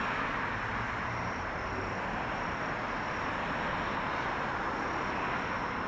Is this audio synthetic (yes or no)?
no